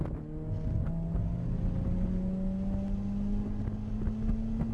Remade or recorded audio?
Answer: recorded